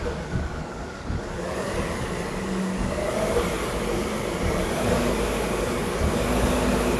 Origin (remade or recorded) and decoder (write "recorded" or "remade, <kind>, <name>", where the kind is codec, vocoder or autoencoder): remade, codec, DAC